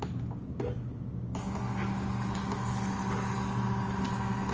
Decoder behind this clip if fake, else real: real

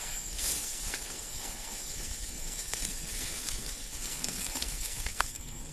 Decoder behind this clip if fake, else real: fake, codec, SNAC